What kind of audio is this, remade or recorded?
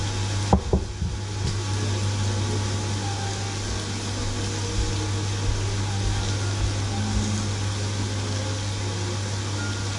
recorded